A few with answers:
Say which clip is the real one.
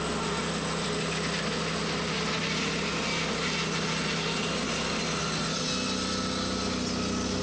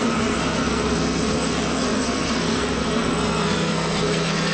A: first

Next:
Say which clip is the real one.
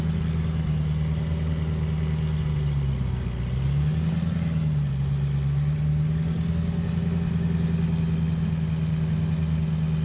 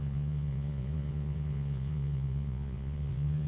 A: first